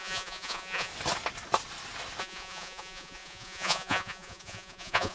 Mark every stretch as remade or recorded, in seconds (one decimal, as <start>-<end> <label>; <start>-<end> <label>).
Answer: 0.0-0.9 remade; 0.9-2.2 recorded; 2.2-5.1 remade